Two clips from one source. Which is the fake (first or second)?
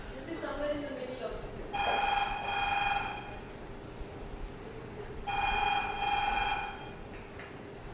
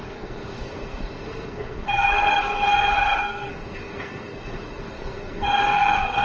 second